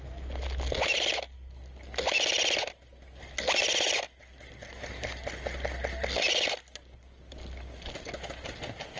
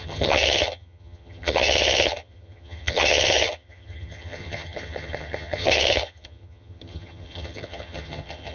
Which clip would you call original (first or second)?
first